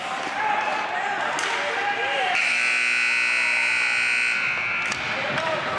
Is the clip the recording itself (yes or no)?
yes